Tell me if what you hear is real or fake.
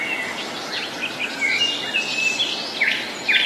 real